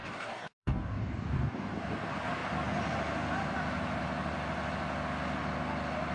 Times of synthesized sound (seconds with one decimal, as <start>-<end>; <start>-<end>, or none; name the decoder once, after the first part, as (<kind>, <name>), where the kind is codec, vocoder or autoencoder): 0.0-1.8 (codec, DAC)

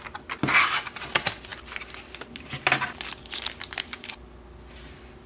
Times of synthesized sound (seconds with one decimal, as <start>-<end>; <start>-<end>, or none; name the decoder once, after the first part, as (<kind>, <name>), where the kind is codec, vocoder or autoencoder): none

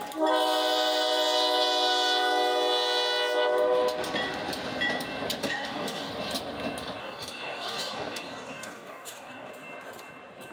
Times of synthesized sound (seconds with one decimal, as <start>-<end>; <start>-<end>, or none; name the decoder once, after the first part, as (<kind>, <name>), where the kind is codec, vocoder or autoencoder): 5.4-6.1 (codec, DAC); 7.0-9.5

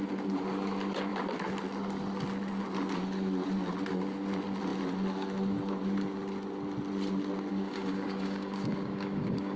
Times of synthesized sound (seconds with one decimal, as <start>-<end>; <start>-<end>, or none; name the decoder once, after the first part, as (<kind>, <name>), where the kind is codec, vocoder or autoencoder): 7.5-9.6 (codec, DAC)

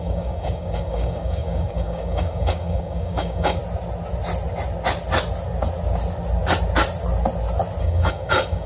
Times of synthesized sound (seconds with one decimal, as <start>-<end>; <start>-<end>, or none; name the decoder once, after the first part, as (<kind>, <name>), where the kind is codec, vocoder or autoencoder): 0.0-3.6 (codec, DAC); 7.8-8.7

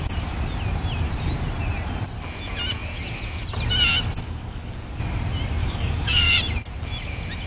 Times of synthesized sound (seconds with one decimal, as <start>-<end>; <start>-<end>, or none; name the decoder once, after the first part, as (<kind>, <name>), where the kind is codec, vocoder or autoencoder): 4.2-5.0 (codec, DAC); 5.6-6.3

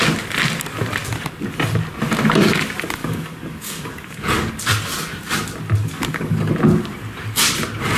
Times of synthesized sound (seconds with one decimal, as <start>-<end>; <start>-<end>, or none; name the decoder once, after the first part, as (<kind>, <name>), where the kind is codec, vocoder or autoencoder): 3.0-4.5 (codec, DAC); 5.8-6.5